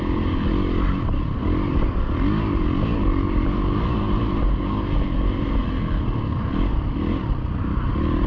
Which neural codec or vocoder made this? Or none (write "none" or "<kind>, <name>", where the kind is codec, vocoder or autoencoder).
none